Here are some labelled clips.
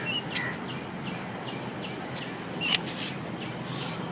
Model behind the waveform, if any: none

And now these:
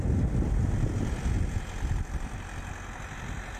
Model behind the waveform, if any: none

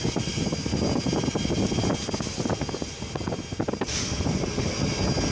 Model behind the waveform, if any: none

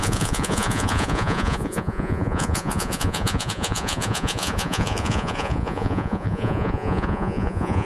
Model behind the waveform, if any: vocoder, Vocos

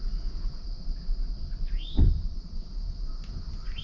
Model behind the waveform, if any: none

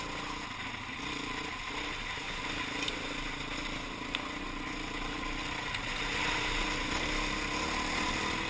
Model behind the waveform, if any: none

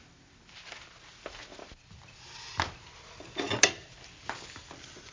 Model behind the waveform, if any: none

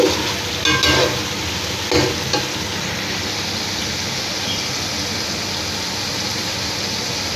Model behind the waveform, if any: none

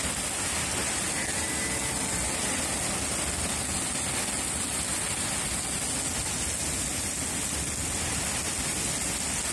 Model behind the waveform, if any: none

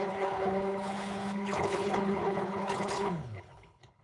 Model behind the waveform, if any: codec, HILCodec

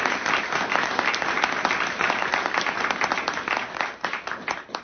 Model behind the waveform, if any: none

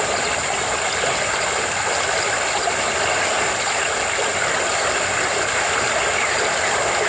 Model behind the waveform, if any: none